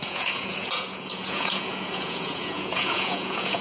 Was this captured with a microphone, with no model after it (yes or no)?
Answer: no